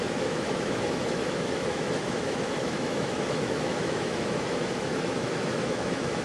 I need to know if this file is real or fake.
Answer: fake